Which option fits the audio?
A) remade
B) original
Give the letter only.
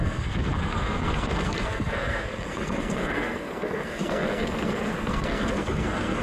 A